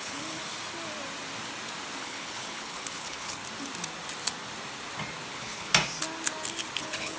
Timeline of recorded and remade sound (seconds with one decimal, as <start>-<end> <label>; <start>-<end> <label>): 0.0-0.4 remade; 0.4-2.0 recorded; 2.0-3.4 remade; 3.4-5.3 recorded; 5.3-5.7 remade; 5.7-6.8 recorded; 6.8-7.2 remade